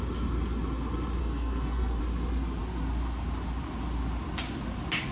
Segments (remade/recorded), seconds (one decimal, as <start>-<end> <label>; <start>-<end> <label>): 0.0-1.2 recorded; 1.2-2.0 remade; 2.0-5.1 recorded